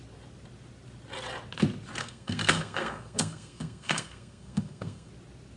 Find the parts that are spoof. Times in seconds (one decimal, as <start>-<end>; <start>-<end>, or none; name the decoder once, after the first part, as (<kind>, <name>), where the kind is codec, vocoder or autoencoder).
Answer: 2.0-5.1 (codec, SNAC)